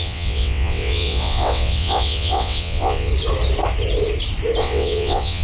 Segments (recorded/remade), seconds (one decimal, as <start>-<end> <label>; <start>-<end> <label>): 0.0-3.1 remade; 3.1-4.6 recorded; 4.6-5.4 remade